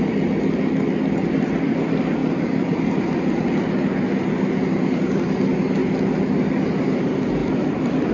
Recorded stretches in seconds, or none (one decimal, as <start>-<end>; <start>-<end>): 0.0-1.2; 1.7-2.2; 2.8-7.4